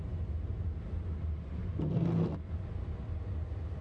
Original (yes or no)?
yes